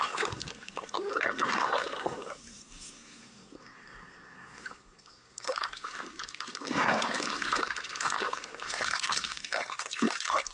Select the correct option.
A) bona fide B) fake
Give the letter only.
B